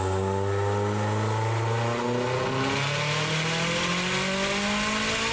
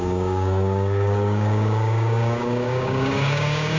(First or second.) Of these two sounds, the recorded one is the first